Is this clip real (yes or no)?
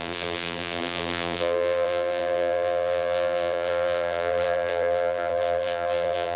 no